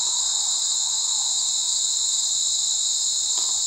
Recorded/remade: remade